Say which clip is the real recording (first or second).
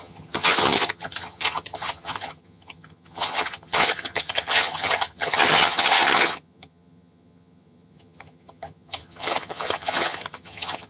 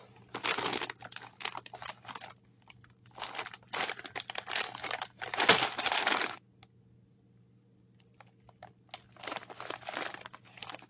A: second